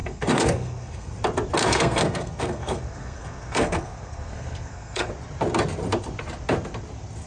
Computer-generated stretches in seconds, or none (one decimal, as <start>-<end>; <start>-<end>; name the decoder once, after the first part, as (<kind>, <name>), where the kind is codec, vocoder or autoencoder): 0.0-1.1 (codec, SNAC); 1.6-5.1